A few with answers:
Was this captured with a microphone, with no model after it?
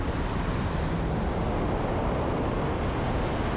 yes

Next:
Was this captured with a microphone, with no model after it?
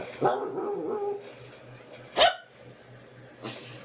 yes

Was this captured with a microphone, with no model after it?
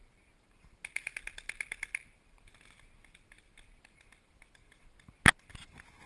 yes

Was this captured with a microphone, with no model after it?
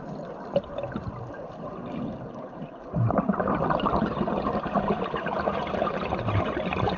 yes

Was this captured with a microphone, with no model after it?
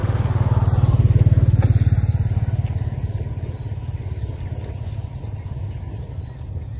yes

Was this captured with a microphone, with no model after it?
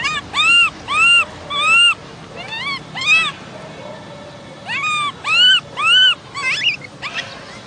yes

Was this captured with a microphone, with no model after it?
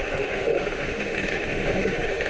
no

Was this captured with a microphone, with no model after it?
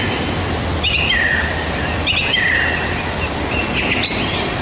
yes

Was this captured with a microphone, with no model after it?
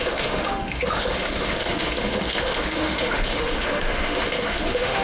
no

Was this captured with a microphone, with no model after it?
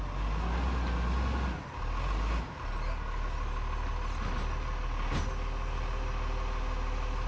yes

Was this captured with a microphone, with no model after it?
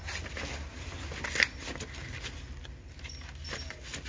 yes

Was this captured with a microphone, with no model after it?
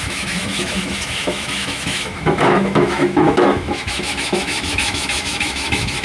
no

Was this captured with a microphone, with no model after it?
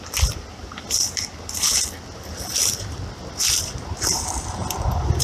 yes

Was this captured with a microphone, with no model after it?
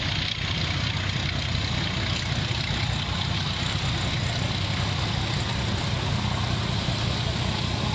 yes